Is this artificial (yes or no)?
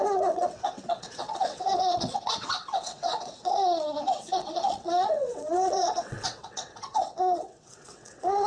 yes